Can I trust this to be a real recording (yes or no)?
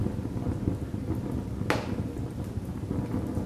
yes